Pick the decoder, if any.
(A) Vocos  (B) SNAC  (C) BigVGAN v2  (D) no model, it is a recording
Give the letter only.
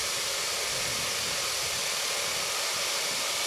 D